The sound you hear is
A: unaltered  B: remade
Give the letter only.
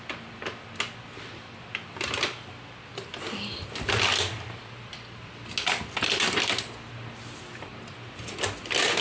A